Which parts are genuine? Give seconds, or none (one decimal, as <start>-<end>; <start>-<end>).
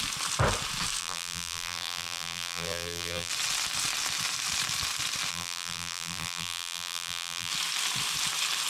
0.0-1.0; 3.3-5.3; 7.5-8.7